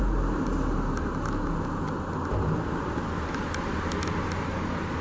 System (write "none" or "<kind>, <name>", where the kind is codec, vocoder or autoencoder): none